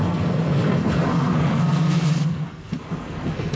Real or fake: fake